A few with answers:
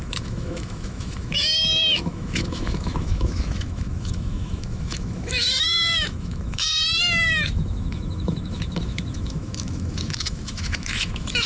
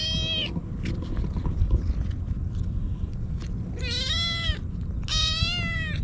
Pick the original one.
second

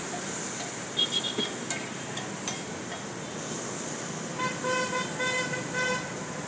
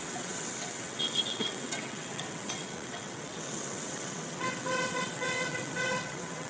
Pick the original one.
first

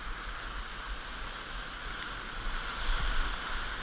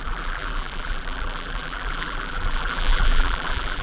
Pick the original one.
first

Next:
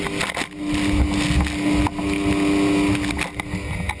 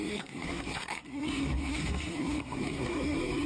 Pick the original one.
first